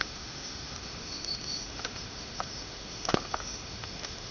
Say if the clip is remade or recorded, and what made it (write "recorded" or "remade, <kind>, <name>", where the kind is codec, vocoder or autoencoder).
remade, autoencoder, DAC-VAE